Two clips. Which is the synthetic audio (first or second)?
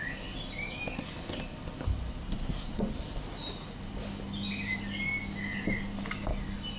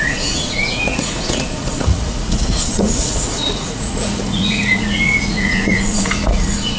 second